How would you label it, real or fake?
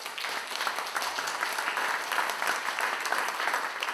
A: real